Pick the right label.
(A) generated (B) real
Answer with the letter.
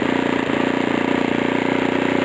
B